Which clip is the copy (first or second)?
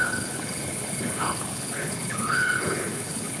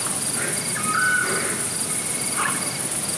first